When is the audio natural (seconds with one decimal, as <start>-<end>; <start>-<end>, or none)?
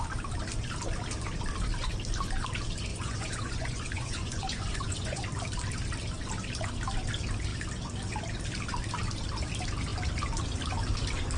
0.0-2.9; 5.2-11.4